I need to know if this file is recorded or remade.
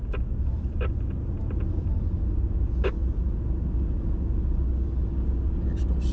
recorded